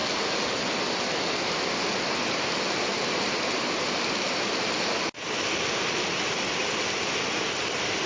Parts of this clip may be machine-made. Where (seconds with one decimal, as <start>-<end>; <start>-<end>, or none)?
none